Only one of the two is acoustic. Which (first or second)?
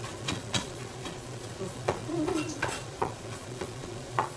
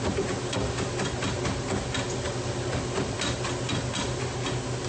second